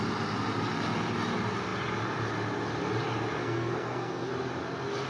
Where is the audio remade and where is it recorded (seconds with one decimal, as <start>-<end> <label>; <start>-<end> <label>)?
0.0-3.4 recorded; 3.4-4.3 remade; 4.3-5.1 recorded